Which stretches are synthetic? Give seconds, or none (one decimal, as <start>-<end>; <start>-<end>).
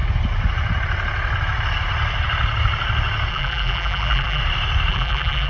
3.3-4.4; 4.9-5.5